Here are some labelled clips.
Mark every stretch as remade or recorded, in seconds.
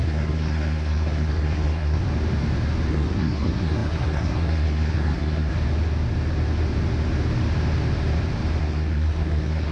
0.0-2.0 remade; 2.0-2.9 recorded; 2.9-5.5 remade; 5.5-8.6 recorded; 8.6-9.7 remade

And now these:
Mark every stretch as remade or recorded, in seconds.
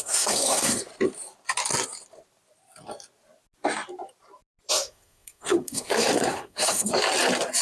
0.0-0.9 remade; 0.9-4.7 recorded; 4.7-6.9 remade; 6.9-7.6 recorded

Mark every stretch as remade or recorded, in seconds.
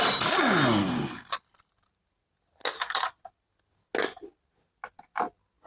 0.0-0.8 recorded; 0.8-1.3 remade; 1.3-5.7 recorded